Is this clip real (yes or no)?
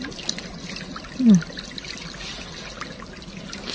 yes